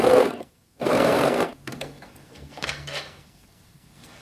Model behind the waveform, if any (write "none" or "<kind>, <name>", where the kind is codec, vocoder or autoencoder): codec, SNAC